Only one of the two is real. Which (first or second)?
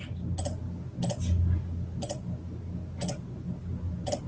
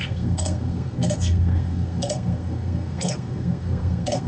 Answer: first